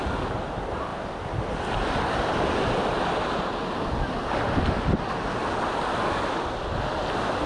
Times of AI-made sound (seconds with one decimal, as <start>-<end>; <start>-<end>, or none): none